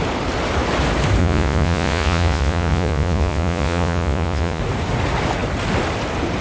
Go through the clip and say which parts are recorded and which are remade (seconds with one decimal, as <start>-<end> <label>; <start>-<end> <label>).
0.0-1.2 recorded; 1.2-4.6 remade; 4.6-6.4 recorded